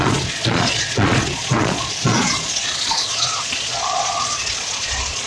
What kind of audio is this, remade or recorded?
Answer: remade